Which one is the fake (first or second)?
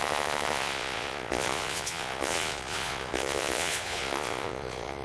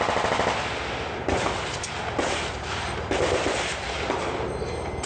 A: first